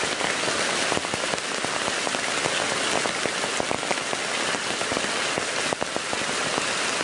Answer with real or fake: real